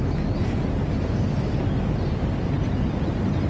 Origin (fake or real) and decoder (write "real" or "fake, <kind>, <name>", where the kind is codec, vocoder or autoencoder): real